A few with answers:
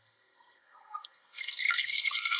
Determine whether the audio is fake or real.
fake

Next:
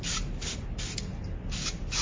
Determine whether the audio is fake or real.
real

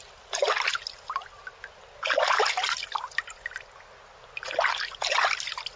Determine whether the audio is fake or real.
real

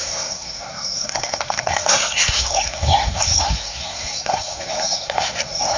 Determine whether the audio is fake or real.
fake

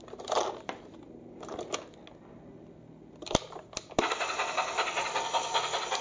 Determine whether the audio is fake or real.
real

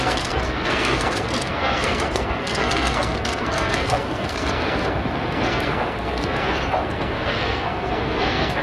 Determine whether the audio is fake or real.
fake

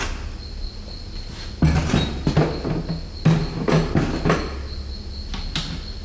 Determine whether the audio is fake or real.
real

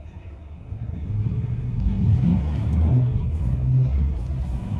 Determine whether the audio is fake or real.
fake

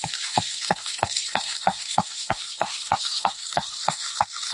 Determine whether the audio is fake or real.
fake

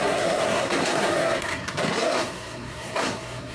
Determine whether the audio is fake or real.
fake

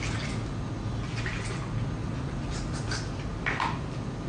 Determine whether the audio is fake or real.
real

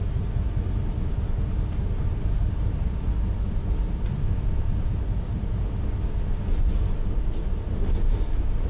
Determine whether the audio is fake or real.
real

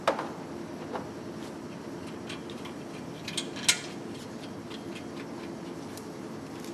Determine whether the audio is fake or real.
real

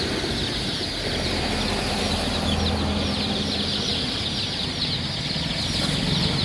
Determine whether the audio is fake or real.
real